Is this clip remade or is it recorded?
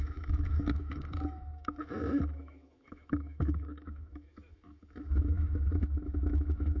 remade